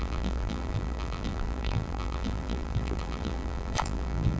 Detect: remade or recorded remade